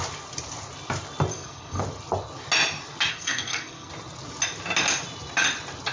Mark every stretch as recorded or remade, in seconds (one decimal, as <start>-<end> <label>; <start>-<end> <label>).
0.0-1.3 recorded; 1.3-1.8 remade; 1.8-3.1 recorded; 3.1-3.9 remade; 3.9-5.9 recorded